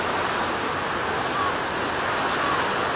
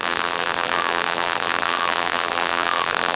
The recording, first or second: first